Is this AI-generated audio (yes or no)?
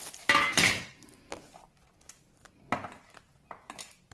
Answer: no